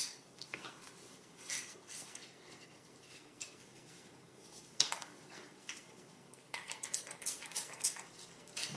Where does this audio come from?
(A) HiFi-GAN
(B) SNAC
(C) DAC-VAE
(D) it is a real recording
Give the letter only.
B